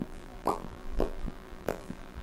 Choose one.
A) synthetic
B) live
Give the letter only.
A